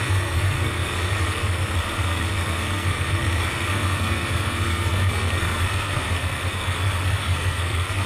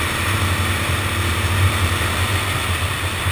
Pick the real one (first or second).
second